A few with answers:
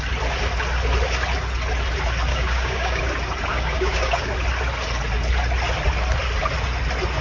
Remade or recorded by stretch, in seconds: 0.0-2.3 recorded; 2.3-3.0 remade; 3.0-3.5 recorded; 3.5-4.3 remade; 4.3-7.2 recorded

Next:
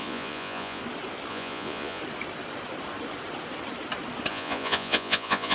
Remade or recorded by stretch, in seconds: 0.0-0.8 remade; 0.8-1.3 recorded; 1.3-2.0 remade; 2.0-4.3 recorded; 4.3-5.5 remade

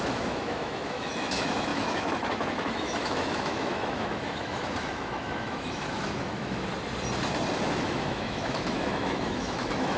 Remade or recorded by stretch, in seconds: 0.0-6.7 remade; 6.7-7.6 recorded; 7.6-10.0 remade

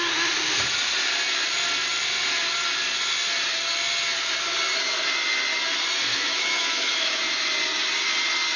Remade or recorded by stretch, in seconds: 0.0-6.1 recorded; 6.1-7.2 remade; 7.2-8.6 recorded

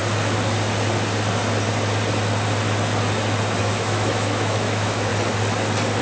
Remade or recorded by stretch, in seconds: 0.0-3.6 recorded; 3.6-5.1 remade; 5.1-6.0 recorded

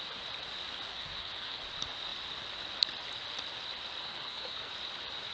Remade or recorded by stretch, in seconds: 0.0-0.9 recorded; 0.9-1.6 remade; 1.6-4.0 recorded; 4.0-4.7 remade; 4.7-5.3 recorded

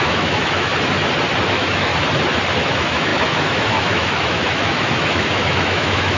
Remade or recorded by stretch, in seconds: 0.0-0.7 remade; 0.7-1.5 recorded; 1.5-1.9 remade; 1.9-2.6 recorded; 2.6-6.2 remade

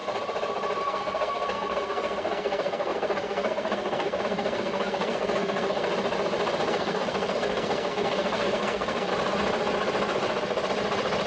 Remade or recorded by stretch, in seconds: 0.0-0.8 recorded; 0.8-5.9 remade; 5.9-6.7 recorded; 6.7-9.1 remade; 9.1-11.3 recorded